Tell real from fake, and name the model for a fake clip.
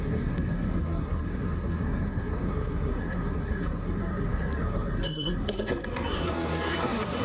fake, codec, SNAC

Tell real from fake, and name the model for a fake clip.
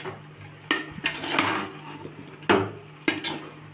real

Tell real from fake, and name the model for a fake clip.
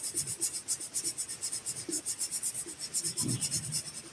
real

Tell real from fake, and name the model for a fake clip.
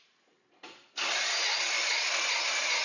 real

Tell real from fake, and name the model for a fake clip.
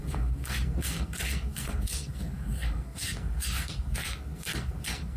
fake, codec, SNAC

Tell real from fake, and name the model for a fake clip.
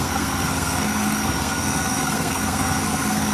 fake, codec, SNAC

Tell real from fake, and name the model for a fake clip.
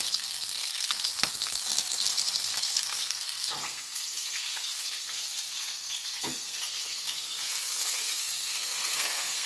fake, codec, SNAC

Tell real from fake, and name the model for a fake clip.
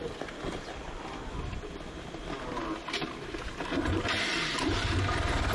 real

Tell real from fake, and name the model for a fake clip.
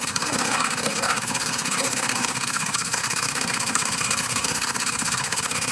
fake, codec, SNAC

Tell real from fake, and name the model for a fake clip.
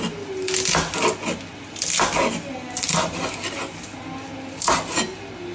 real